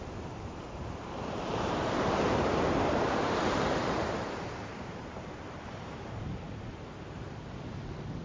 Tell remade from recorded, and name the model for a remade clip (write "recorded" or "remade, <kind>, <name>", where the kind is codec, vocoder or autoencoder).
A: remade, vocoder, BigVGAN v2